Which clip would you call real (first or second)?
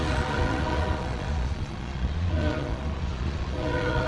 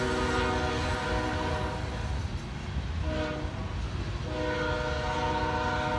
second